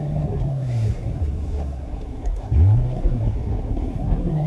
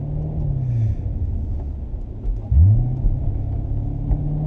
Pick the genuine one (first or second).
second